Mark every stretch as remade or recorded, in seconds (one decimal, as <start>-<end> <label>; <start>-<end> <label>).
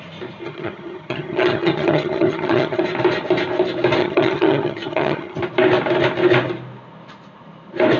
0.0-0.4 recorded; 0.4-2.8 remade; 2.8-4.0 recorded; 4.0-5.4 remade; 5.4-8.0 recorded